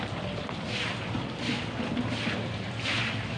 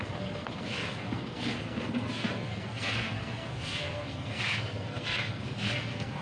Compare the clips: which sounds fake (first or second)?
second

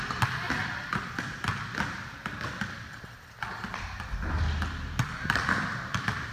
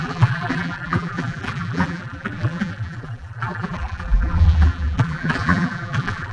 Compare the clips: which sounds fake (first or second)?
second